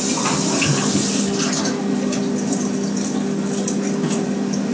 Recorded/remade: recorded